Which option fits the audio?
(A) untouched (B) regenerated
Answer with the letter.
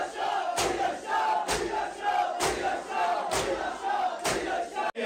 A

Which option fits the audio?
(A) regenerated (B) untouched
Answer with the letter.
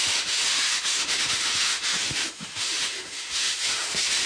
A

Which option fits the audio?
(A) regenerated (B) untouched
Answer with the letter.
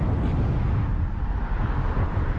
B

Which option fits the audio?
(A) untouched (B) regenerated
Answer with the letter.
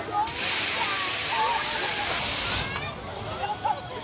A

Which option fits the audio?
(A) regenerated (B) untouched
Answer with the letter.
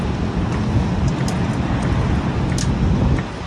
B